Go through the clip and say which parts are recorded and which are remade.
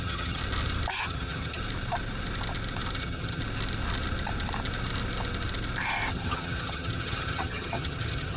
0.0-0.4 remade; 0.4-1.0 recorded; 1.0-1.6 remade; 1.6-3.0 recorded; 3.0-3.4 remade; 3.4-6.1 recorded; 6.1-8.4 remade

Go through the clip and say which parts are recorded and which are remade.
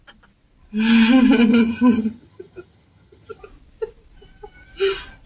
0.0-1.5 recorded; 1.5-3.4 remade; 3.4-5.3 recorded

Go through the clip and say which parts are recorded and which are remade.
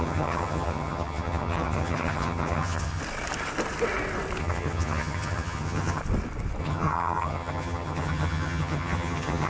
0.0-3.0 remade; 3.0-4.4 recorded; 4.4-6.0 remade; 6.0-6.6 recorded; 6.6-9.5 remade